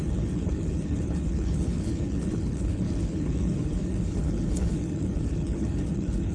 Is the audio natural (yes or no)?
no